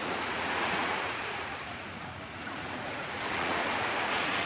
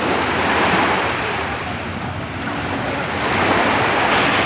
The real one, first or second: second